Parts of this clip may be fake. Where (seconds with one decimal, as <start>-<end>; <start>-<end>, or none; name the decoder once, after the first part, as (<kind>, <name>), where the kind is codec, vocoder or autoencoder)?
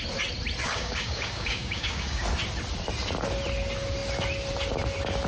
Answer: 0.6-2.2 (codec, DAC)